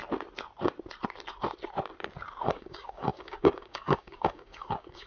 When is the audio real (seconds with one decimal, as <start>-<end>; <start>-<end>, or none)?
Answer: 0.0-2.5